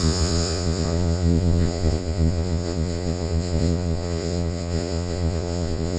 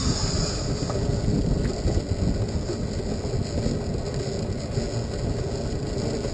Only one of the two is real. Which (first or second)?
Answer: second